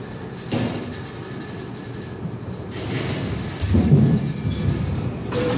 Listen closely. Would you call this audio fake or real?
real